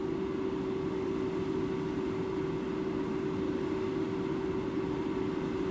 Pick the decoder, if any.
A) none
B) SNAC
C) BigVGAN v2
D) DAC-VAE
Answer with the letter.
A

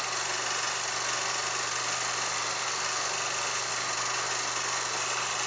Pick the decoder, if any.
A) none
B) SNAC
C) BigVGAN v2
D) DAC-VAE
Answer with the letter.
A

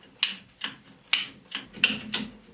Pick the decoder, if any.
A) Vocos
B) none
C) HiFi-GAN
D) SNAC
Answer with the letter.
B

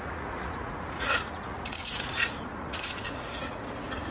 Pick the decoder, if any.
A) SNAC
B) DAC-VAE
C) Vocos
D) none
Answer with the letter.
C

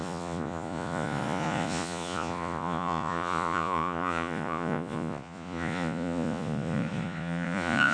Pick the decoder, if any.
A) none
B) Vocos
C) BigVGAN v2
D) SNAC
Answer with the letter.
B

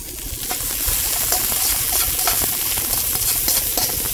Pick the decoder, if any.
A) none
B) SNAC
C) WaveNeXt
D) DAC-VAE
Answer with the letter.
A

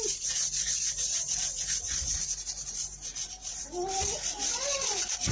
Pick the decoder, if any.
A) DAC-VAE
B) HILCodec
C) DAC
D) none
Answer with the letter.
D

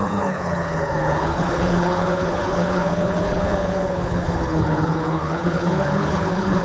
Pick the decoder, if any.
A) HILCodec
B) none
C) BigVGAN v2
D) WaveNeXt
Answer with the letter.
A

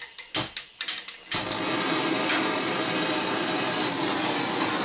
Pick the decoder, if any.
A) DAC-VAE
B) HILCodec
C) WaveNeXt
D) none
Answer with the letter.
D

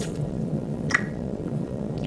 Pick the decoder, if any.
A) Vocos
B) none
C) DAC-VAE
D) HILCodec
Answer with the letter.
A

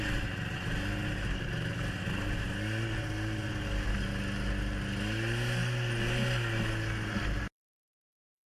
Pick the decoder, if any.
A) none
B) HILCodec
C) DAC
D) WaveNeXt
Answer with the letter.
A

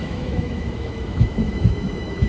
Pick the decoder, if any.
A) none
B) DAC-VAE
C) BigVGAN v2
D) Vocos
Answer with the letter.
B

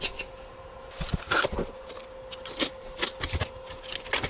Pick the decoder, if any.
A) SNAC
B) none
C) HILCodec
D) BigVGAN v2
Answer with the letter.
B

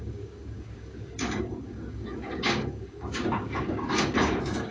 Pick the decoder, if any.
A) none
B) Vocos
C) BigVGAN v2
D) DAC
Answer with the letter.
D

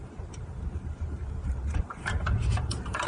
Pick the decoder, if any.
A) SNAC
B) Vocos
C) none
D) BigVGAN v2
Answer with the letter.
D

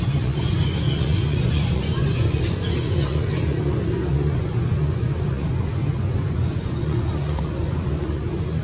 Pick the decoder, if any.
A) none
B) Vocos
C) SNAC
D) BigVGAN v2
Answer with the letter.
B